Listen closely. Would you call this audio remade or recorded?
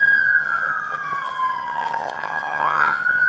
remade